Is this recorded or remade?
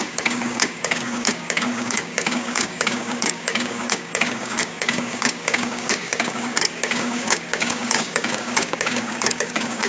remade